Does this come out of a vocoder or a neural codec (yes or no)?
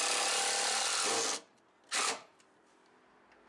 no